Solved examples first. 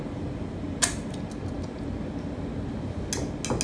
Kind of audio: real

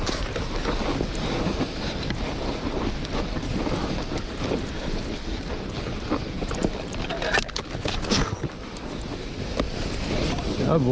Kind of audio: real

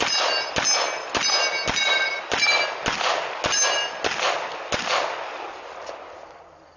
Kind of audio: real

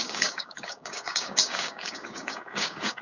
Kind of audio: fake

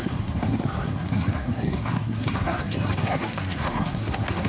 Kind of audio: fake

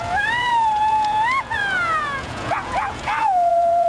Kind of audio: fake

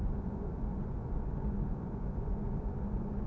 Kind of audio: fake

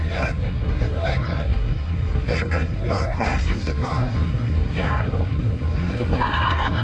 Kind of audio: fake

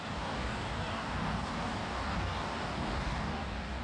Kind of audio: fake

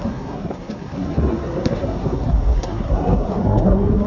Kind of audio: fake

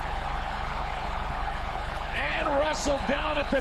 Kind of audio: fake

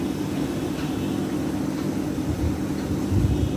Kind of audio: real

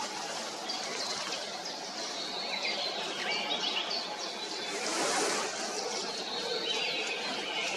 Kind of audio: real